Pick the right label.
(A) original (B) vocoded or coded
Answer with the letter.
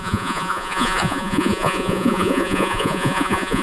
B